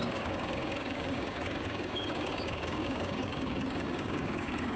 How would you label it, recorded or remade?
remade